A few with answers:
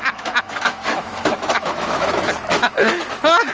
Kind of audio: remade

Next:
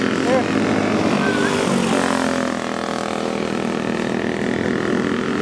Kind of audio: recorded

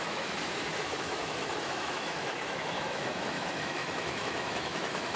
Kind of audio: remade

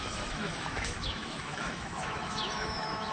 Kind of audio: remade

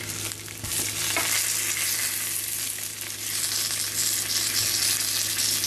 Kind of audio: recorded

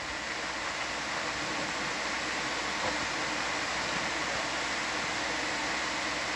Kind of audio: recorded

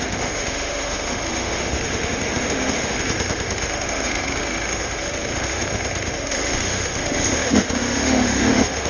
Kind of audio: remade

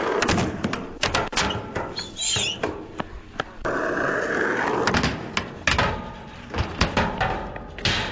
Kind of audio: recorded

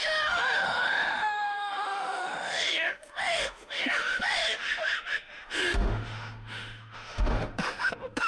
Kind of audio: remade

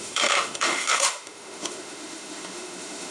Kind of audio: remade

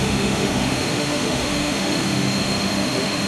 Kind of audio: remade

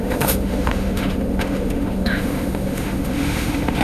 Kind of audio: remade